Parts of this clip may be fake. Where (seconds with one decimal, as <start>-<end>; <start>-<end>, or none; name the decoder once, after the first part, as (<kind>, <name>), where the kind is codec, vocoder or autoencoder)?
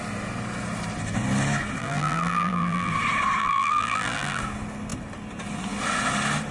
1.8-2.9 (vocoder, BigVGAN v2); 3.4-4.4